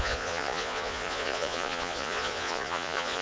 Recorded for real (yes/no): no